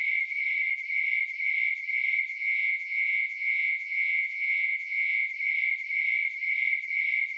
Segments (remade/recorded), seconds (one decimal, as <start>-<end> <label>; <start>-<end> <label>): 0.0-2.3 recorded; 2.3-5.3 remade; 5.3-7.4 recorded